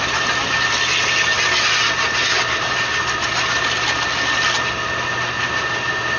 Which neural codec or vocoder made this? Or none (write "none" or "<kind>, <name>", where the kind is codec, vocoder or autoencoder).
none